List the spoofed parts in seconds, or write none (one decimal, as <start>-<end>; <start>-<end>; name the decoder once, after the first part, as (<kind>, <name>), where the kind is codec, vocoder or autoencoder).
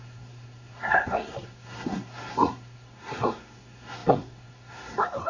0.0-5.3 (codec, SNAC)